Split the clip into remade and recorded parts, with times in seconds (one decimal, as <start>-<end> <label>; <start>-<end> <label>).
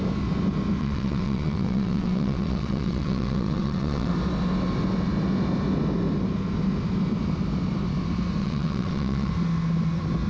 0.0-0.8 recorded; 0.8-4.1 remade; 4.1-8.4 recorded; 8.4-9.3 remade; 9.3-10.3 recorded